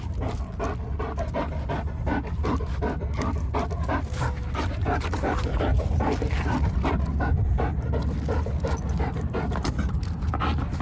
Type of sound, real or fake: real